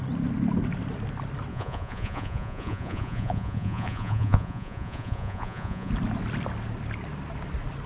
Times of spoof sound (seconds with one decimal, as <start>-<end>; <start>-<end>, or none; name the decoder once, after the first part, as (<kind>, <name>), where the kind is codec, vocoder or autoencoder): 1.5-5.9 (vocoder, Vocos)